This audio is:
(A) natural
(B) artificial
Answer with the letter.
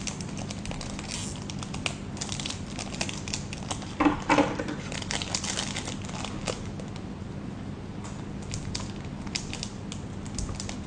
A